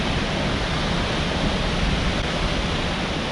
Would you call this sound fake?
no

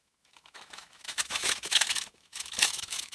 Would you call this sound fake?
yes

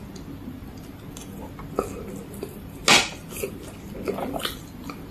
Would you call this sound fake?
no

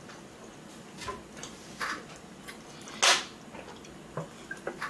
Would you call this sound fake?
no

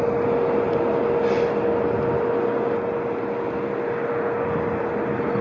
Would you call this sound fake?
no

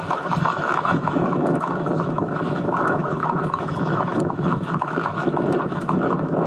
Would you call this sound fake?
yes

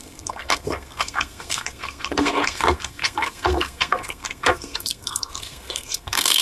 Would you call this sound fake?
yes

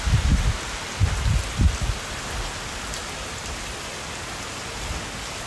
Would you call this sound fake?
no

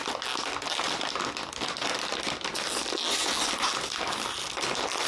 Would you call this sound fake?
no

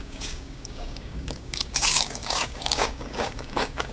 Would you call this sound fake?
yes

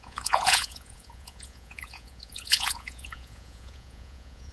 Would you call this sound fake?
yes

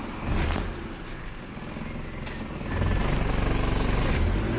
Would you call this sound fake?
no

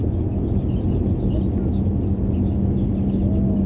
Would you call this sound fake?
no